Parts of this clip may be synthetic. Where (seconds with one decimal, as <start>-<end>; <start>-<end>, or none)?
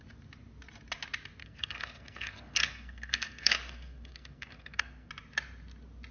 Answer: 1.4-5.1